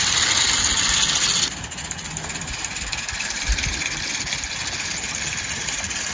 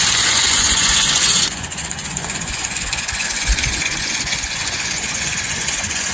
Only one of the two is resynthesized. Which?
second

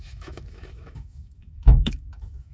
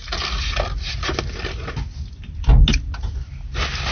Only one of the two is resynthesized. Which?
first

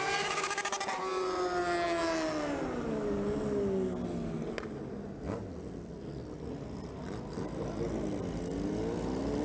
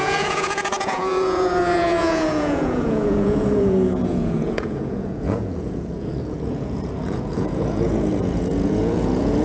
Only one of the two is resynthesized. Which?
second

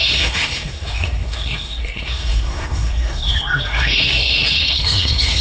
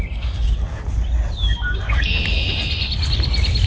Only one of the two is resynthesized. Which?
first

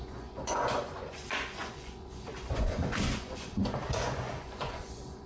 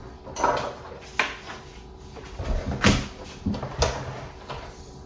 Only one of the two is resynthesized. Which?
first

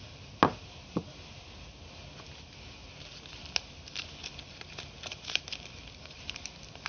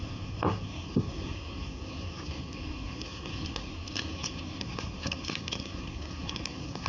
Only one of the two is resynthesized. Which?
second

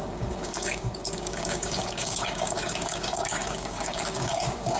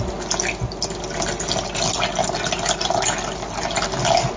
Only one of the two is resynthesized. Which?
first